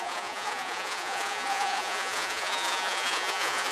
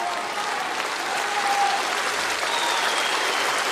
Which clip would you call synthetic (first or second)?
first